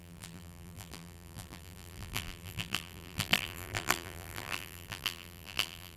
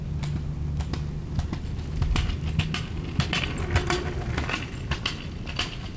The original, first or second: second